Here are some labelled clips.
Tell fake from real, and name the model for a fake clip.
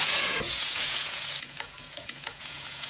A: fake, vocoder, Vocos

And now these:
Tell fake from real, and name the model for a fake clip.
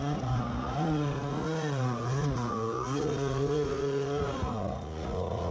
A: fake, vocoder, Vocos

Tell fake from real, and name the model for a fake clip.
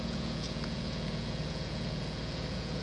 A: fake, vocoder, Vocos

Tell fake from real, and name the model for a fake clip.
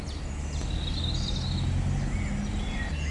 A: real